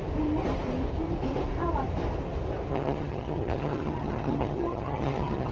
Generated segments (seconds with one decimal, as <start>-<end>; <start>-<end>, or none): 2.7-5.5